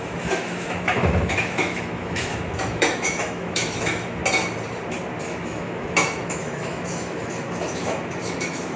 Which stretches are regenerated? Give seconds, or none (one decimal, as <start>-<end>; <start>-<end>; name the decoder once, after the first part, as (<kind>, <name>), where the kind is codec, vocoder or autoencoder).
0.0-4.2 (autoencoder, DAC-VAE); 5.2-8.8